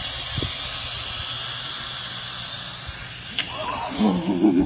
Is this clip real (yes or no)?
yes